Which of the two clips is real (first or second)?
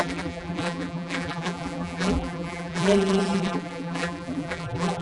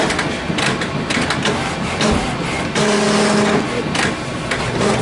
second